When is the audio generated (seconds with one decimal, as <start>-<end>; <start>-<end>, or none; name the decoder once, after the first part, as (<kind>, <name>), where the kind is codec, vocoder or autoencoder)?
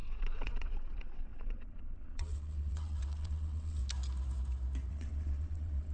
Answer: 0.0-3.8 (vocoder, WaveNeXt); 4.9-5.9